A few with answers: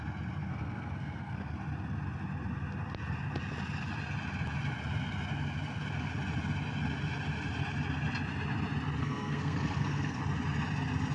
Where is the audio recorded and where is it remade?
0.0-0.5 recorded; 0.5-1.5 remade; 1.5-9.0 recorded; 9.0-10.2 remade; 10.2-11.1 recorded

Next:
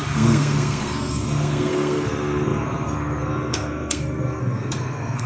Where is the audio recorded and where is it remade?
0.0-5.3 remade